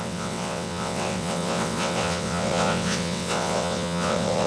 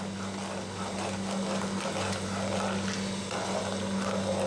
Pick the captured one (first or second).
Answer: second